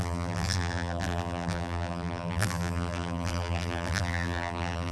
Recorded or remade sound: remade